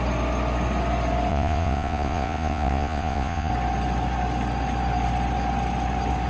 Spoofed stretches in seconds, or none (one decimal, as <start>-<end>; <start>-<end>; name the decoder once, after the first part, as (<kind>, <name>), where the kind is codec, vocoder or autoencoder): 1.3-3.5 (vocoder, Vocos)